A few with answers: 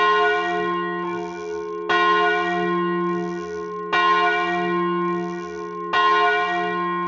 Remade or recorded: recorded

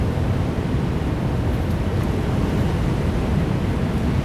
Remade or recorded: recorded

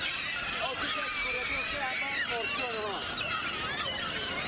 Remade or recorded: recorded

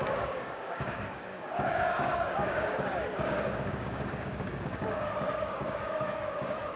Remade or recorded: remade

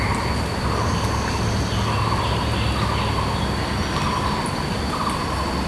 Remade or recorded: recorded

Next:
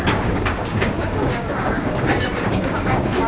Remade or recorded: remade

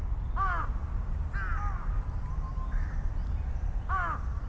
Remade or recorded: recorded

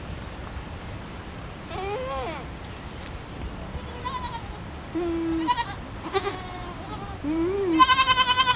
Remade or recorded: recorded